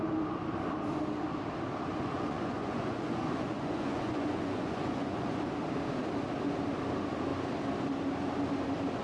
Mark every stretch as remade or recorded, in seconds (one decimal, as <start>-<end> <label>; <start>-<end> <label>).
0.0-1.9 recorded; 1.9-5.4 remade; 5.4-9.0 recorded